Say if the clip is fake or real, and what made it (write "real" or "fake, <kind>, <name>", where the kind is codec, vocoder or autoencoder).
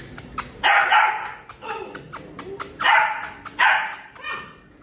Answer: real